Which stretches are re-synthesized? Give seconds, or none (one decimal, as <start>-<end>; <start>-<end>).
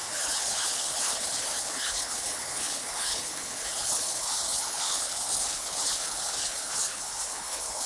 0.0-7.9